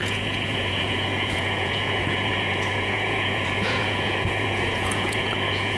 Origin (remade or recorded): remade